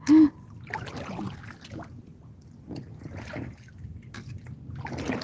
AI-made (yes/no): no